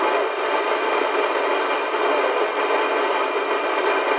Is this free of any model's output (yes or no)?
yes